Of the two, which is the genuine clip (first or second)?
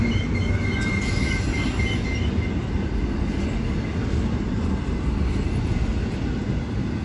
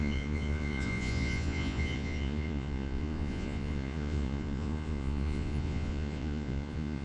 first